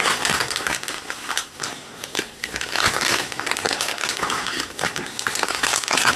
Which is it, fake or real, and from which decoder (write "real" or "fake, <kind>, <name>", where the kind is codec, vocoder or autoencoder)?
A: fake, codec, SNAC